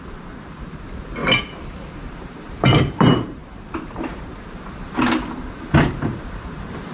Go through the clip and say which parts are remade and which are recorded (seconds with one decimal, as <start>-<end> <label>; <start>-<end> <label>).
0.0-1.2 remade; 1.2-2.1 recorded; 2.1-6.9 remade

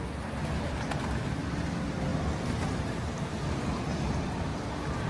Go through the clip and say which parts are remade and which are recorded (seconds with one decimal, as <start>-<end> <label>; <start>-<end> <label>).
0.0-2.1 recorded; 2.1-3.3 remade; 3.3-4.5 recorded; 4.5-5.1 remade